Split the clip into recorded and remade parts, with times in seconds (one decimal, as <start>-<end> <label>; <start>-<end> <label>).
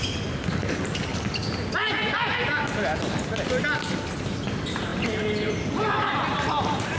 0.0-7.0 recorded